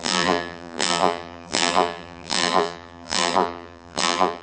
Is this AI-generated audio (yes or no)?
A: yes